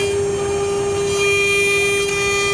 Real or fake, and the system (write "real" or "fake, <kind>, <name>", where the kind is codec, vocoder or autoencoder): real